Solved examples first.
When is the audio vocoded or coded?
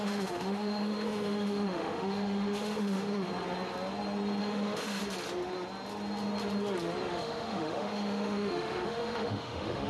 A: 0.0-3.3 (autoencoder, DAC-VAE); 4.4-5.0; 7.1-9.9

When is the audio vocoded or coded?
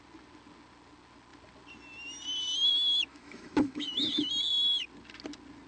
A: 3.1-4.3 (autoencoder, DAC-VAE)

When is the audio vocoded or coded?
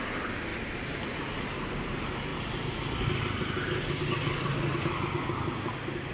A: none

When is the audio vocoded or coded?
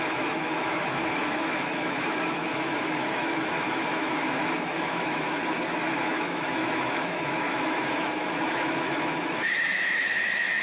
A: 0.0-5.4 (autoencoder, DAC-VAE); 6.0-10.6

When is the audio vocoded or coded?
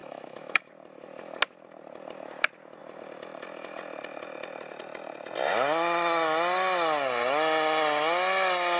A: 0.0-0.7 (autoencoder, DAC-VAE)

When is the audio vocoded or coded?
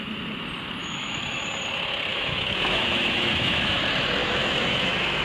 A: 0.8-1.4 (autoencoder, DAC-VAE); 2.1-3.8; 4.2-5.2